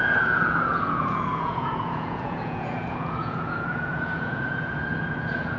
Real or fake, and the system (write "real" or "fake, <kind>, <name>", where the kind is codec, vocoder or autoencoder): fake, vocoder, Vocos